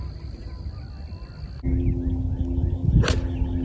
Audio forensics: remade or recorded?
recorded